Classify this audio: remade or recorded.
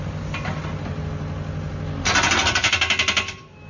recorded